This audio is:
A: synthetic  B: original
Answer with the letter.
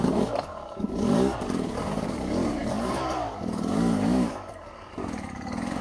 A